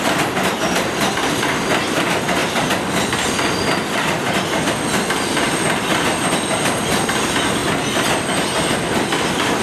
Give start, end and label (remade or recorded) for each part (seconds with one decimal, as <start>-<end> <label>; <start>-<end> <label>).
0.0-7.6 remade; 7.6-8.9 recorded; 8.9-9.6 remade